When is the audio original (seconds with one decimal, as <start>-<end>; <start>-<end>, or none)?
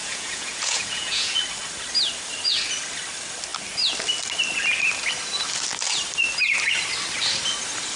1.4-8.0